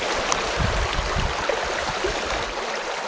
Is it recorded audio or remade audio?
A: recorded